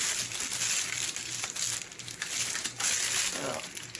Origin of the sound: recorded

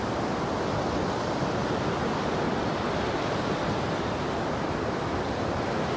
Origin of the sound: recorded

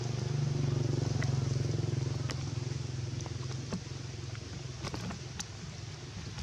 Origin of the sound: recorded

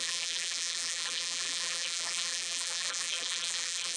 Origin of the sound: remade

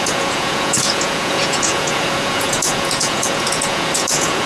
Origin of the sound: remade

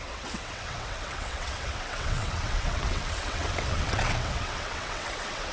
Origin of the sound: remade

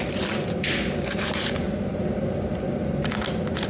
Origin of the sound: recorded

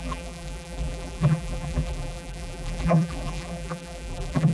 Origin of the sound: remade